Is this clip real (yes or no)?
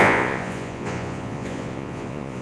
no